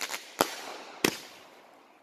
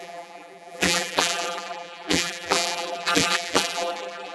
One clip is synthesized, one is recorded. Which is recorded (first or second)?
first